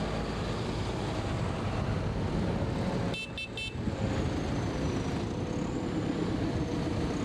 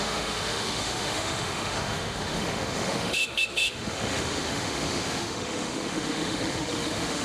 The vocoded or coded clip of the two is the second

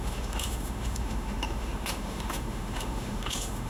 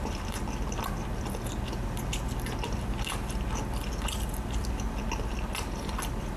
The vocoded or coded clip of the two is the first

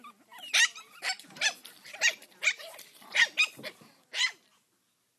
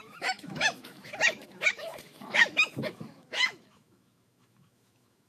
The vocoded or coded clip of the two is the second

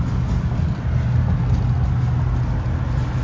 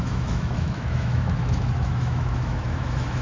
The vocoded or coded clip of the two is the second